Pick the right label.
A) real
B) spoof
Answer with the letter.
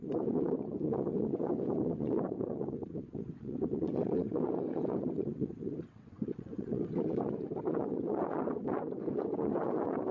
B